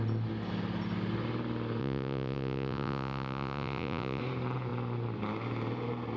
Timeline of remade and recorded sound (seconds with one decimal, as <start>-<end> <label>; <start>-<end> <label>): 0.0-1.8 recorded; 1.8-4.2 remade; 4.2-6.2 recorded